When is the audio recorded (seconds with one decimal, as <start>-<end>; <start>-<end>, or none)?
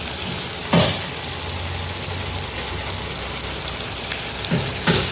0.0-5.1